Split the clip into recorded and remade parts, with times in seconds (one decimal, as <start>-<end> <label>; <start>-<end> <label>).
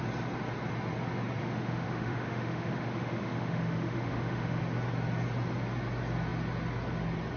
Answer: 0.0-1.4 recorded; 1.4-4.6 remade; 4.6-7.4 recorded